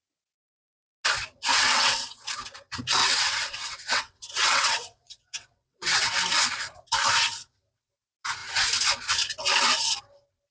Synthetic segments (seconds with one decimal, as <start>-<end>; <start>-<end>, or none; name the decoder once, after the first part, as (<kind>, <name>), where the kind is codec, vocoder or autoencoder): 1.5-2.3 (vocoder, WaveNeXt); 3.0-6.1